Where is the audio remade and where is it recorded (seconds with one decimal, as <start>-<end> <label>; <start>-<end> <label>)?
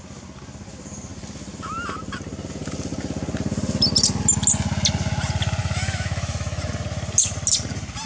0.0-5.6 recorded; 5.6-6.7 remade; 6.7-8.1 recorded